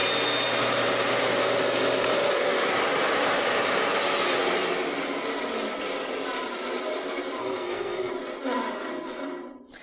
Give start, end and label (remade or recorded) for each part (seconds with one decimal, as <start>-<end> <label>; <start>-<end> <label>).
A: 0.0-7.4 recorded; 7.4-8.1 remade; 8.1-9.8 recorded